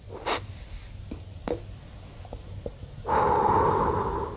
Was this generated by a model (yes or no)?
no